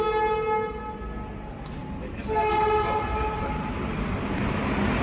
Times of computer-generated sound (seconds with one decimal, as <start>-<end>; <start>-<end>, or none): none

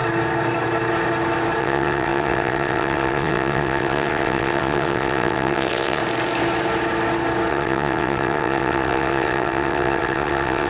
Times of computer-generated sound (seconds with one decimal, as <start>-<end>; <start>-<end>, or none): 1.6-6.0; 7.5-10.7

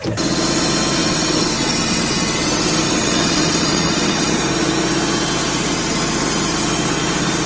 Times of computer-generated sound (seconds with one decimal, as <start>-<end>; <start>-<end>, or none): 1.0-4.4

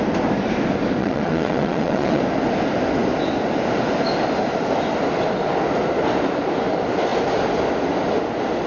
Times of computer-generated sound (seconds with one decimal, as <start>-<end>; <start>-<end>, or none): 1.0-2.2